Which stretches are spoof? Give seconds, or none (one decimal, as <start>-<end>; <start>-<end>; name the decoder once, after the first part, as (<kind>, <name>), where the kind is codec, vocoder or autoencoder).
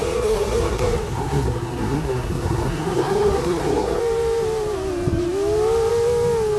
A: 0.0-4.0 (codec, SNAC)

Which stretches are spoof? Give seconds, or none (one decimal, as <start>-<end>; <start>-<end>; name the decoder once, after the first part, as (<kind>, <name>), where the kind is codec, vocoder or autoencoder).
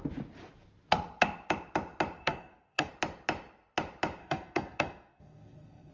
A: 2.2-2.9 (codec, SNAC); 4.2-5.9